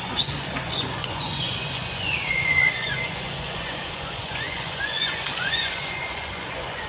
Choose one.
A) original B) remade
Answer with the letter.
B